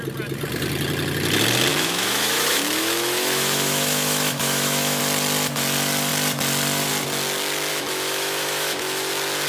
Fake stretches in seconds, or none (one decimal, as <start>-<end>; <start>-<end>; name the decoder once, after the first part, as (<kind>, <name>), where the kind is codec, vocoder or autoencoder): 1.7-5.0 (autoencoder, DAC-VAE); 7.7-9.1